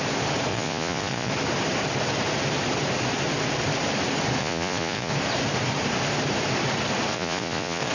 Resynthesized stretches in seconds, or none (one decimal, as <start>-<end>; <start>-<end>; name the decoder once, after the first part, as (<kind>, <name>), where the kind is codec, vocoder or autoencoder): 0.5-1.3 (vocoder, Vocos); 4.4-5.1; 7.1-7.9